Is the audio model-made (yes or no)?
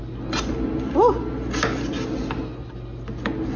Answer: no